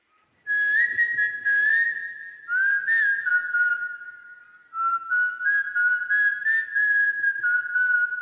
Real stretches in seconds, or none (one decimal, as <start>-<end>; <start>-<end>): 0.0-8.2